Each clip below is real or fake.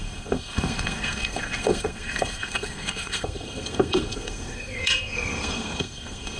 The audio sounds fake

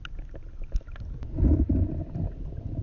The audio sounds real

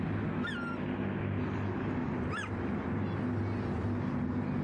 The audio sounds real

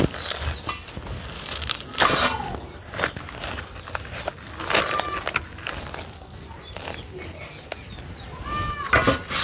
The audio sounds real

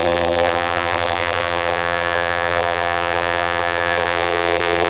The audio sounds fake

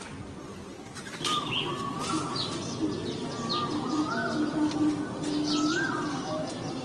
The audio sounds real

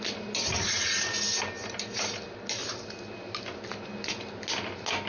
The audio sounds real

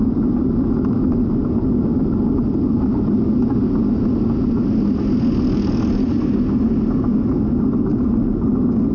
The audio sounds real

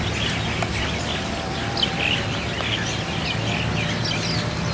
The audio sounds real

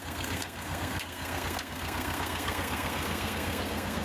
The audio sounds fake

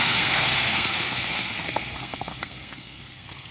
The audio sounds fake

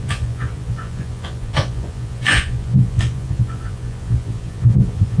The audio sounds fake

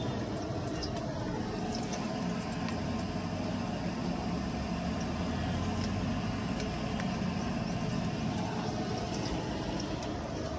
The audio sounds real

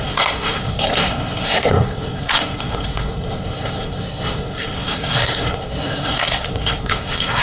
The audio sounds fake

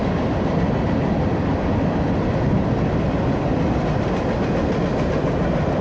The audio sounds real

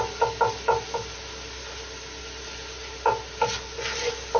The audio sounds real